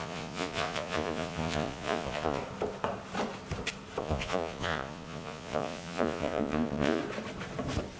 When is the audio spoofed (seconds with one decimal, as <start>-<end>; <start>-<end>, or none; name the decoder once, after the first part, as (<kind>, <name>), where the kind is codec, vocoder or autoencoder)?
0.0-2.4 (vocoder, Vocos); 4.0-7.0